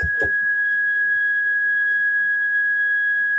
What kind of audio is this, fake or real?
real